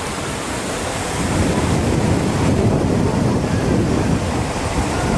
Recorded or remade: recorded